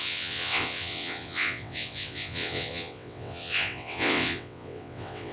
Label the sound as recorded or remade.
remade